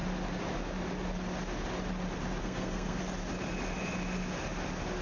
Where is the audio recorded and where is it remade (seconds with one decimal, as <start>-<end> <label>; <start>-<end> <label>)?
0.0-2.4 recorded; 2.4-3.0 remade; 3.0-5.0 recorded